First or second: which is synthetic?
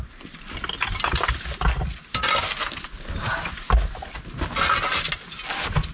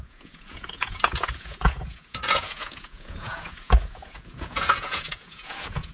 second